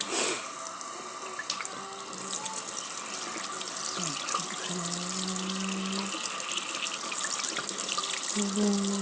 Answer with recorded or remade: recorded